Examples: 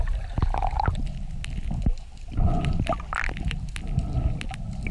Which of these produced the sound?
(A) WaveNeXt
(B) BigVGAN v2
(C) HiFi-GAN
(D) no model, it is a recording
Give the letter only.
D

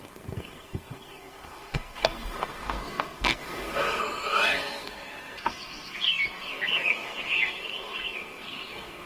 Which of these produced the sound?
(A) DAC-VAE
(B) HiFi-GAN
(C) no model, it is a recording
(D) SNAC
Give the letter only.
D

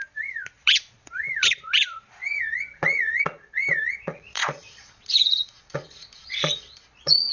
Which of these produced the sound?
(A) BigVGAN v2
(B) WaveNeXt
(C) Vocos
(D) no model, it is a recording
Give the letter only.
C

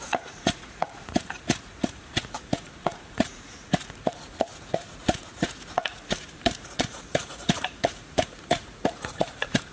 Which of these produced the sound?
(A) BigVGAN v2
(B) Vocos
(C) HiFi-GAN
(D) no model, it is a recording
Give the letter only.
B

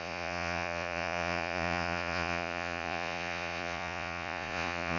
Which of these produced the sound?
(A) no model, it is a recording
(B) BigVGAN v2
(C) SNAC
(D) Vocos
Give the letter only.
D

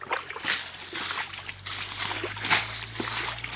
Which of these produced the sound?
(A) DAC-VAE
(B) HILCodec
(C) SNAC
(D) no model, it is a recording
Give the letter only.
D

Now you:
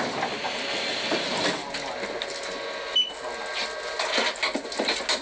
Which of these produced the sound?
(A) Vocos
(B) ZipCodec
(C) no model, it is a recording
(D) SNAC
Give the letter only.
C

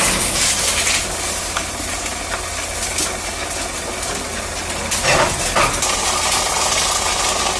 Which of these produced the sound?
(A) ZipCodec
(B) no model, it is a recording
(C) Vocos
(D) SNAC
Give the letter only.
B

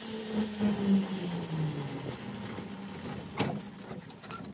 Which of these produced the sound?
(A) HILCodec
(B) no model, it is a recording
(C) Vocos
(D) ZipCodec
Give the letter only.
B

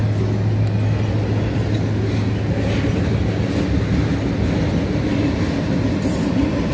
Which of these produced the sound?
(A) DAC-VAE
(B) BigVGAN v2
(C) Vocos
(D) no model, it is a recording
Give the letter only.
D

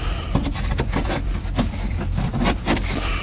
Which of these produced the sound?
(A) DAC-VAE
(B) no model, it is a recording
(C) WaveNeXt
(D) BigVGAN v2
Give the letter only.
D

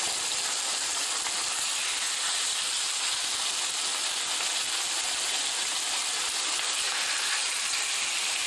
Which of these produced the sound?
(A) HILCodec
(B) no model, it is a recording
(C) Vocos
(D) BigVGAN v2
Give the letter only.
B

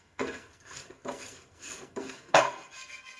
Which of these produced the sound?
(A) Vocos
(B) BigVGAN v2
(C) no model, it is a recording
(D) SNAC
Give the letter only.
D